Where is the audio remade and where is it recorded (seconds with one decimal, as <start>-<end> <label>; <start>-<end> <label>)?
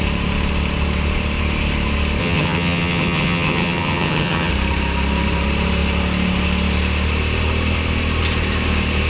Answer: 0.0-2.2 recorded; 2.2-4.5 remade; 4.5-9.1 recorded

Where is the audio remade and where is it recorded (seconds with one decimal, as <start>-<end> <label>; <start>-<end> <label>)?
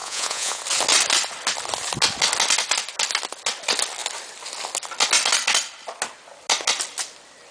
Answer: 0.0-0.6 remade; 0.6-7.5 recorded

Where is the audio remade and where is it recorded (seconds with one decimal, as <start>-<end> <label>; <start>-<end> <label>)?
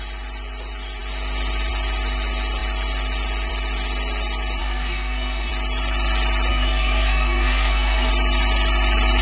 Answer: 0.0-4.6 recorded; 4.6-5.5 remade; 5.5-6.5 recorded; 6.5-8.1 remade; 8.1-9.2 recorded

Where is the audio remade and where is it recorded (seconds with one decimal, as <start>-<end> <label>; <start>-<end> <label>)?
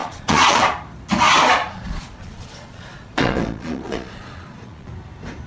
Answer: 0.0-0.6 remade; 0.6-1.6 recorded; 1.6-4.9 remade; 4.9-5.5 recorded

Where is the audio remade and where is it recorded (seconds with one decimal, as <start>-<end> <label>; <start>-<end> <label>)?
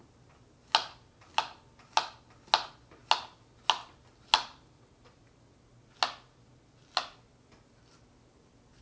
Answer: 0.0-8.8 recorded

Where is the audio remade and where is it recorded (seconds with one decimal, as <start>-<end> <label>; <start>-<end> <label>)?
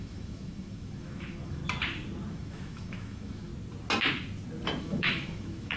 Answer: 0.0-1.6 remade; 1.6-2.3 recorded; 2.3-3.5 remade; 3.5-4.8 recorded; 4.8-5.8 remade